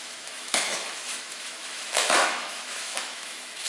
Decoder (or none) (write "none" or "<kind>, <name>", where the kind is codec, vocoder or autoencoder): autoencoder, DAC-VAE